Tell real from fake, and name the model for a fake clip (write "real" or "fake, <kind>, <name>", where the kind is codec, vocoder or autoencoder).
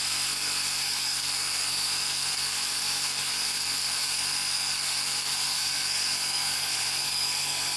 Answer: fake, codec, SNAC